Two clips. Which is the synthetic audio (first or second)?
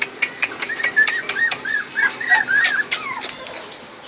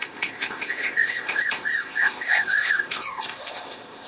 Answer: second